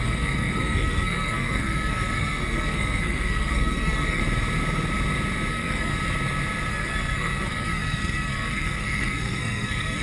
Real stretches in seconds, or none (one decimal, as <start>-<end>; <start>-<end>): 4.2-5.5; 5.9-6.7